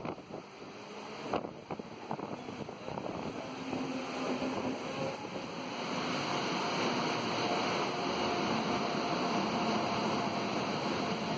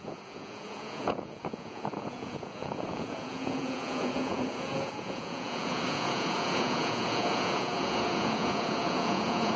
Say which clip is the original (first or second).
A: first